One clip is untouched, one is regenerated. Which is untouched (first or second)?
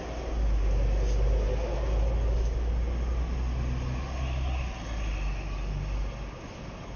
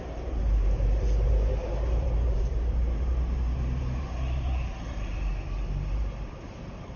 first